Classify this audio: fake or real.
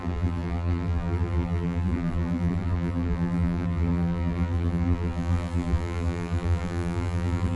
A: fake